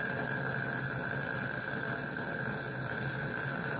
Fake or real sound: real